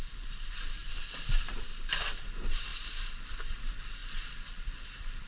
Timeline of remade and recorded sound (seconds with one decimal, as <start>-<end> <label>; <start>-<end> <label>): 0.0-0.8 remade; 0.8-1.4 recorded; 1.4-5.3 remade